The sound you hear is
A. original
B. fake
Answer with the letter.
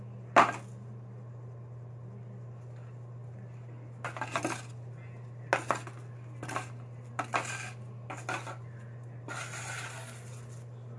A